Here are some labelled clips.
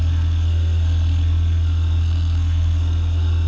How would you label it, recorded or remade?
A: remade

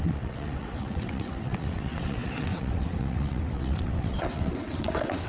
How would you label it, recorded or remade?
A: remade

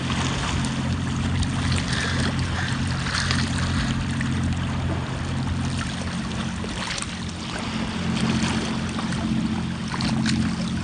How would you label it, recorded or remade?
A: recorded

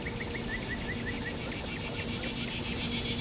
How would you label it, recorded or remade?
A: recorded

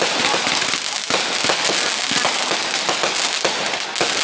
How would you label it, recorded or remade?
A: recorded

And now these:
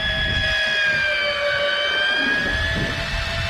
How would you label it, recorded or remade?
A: recorded